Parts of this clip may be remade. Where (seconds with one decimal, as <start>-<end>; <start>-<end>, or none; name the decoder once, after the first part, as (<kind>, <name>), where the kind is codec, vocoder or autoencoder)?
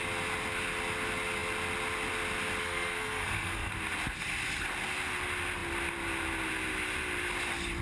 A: 2.6-3.7 (codec, SNAC)